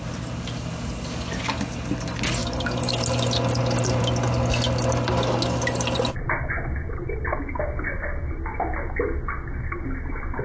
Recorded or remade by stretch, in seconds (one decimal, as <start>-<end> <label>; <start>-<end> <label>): 0.0-2.4 recorded; 2.4-2.9 remade; 2.9-10.4 recorded